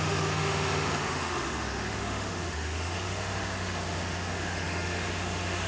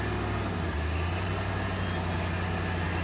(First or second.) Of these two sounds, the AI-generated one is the first